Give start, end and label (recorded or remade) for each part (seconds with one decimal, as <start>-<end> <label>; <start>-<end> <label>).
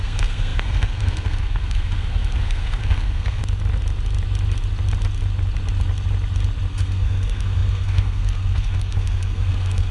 0.0-3.4 remade; 3.4-6.7 recorded; 6.7-9.9 remade